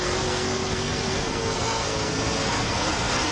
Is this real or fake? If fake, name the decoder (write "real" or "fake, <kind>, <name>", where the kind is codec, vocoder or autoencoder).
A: fake, codec, SNAC